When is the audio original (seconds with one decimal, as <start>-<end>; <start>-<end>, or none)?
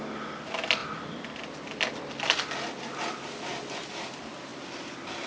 0.0-5.3